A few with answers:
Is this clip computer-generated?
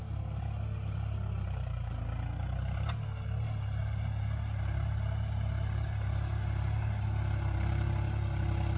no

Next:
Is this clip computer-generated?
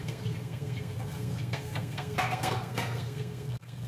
yes